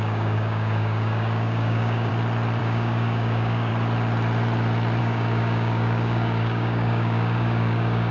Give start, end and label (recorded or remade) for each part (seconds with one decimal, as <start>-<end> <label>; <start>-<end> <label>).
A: 0.0-2.1 remade; 2.1-2.6 recorded; 2.6-3.7 remade; 3.7-5.0 recorded; 5.0-8.1 remade